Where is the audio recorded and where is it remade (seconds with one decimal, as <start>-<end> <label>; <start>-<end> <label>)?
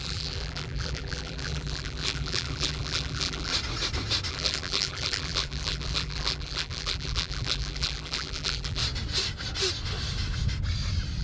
0.0-3.5 remade; 3.5-4.3 recorded; 4.3-8.8 remade; 8.8-11.2 recorded